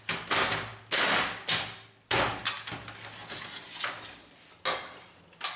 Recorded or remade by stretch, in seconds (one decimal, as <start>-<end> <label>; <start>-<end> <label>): 0.0-5.6 recorded